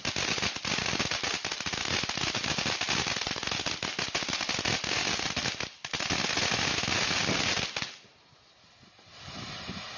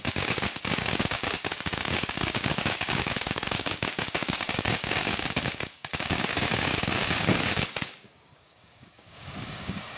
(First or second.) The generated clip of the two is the second